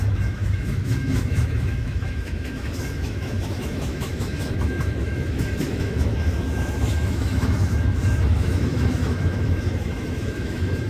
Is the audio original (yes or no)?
no